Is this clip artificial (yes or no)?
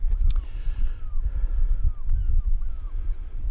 no